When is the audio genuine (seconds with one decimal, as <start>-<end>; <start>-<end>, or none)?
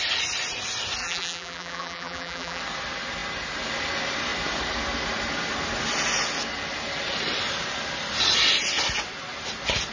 0.0-1.0; 2.6-9.9